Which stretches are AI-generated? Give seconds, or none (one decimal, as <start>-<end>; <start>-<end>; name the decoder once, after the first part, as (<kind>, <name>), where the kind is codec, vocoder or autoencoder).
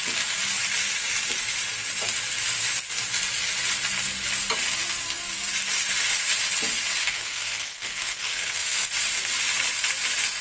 7.0-8.9 (codec, SNAC)